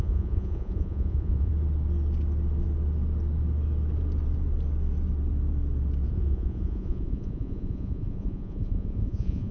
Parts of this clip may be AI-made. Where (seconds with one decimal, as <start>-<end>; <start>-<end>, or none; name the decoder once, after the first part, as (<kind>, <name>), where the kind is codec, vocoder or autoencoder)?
0.0-1.5 (vocoder, Vocos); 6.1-9.5